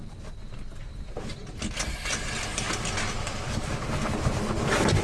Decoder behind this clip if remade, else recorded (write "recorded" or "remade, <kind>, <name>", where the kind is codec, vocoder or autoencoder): recorded